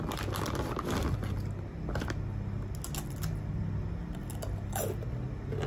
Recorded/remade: recorded